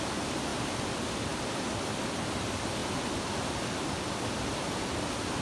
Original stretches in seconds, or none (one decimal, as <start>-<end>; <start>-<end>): 0.0-5.4